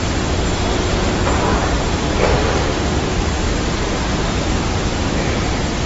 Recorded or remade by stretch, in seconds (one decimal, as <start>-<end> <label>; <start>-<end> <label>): 0.0-1.5 recorded; 1.5-5.0 remade; 5.0-5.9 recorded